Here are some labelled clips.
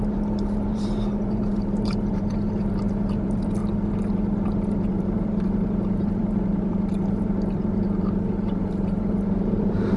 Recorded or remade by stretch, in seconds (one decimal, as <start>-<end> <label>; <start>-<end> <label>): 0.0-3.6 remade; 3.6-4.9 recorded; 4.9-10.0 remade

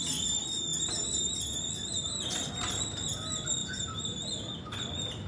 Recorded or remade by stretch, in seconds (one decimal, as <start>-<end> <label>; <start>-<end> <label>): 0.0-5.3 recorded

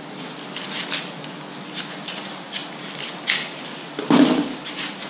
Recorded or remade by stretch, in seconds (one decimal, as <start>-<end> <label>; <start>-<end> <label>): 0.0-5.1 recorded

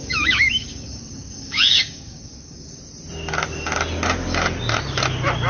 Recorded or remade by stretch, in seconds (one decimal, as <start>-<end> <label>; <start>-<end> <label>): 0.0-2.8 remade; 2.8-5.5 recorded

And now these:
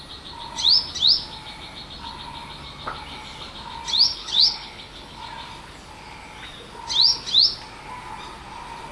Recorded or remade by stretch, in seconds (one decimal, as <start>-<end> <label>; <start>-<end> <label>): 0.0-4.2 recorded; 4.2-5.2 remade; 5.2-8.9 recorded

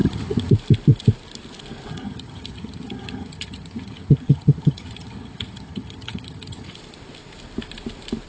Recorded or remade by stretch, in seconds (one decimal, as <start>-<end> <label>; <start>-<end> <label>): 0.0-0.5 remade; 0.5-1.9 recorded; 1.9-6.7 remade; 6.7-8.3 recorded

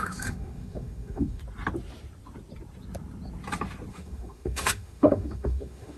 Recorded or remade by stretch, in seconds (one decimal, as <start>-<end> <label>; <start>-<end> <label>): 0.0-1.4 remade; 1.4-3.9 recorded; 3.9-6.0 remade

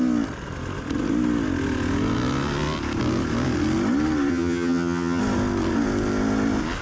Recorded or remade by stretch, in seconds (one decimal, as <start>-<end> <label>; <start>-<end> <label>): 0.0-4.3 recorded; 4.3-5.2 remade; 5.2-6.8 recorded